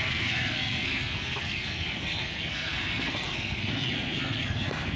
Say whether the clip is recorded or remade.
remade